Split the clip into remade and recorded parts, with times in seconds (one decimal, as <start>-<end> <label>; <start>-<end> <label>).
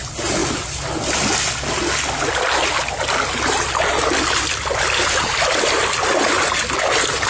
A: 0.0-0.4 recorded; 0.4-1.5 remade; 1.5-7.3 recorded